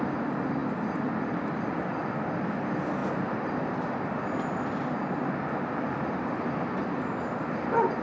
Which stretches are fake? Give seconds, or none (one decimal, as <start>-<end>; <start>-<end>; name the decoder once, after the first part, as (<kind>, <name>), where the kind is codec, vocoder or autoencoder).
none